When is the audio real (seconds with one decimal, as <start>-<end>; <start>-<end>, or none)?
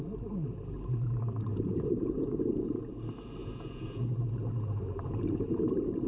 0.0-1.5; 2.8-3.4; 4.2-6.1